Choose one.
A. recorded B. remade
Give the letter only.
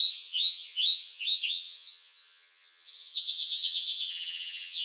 B